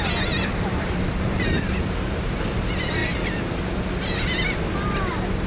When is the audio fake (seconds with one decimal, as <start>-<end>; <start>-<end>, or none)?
0.5-2.4; 3.0-3.5